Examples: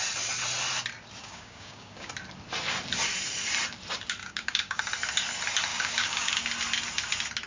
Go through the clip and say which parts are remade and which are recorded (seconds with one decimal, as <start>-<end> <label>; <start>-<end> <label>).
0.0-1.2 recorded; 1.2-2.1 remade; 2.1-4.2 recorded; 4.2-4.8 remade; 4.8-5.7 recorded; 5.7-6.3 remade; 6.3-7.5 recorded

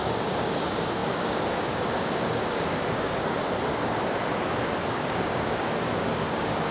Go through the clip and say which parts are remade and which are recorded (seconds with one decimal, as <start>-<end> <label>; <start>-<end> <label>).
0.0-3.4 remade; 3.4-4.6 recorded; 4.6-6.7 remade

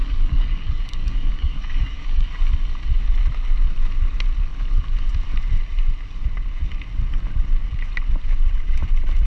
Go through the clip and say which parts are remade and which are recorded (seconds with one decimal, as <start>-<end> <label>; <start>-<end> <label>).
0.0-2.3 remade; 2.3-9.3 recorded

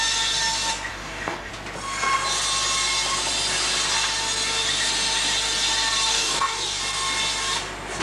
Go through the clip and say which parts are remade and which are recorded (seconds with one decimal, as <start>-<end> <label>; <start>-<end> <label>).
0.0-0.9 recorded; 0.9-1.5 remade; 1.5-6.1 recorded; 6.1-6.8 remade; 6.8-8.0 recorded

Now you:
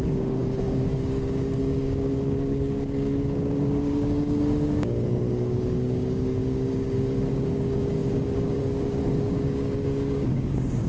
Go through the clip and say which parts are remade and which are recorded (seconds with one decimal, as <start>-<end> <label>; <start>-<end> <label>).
0.0-10.9 remade

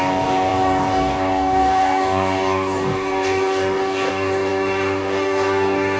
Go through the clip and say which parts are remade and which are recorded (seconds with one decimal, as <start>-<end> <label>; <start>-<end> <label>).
0.0-6.0 remade